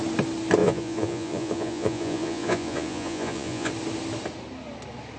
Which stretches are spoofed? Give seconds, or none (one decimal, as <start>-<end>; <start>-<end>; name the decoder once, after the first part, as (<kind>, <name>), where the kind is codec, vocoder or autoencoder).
0.6-3.7 (vocoder, Vocos)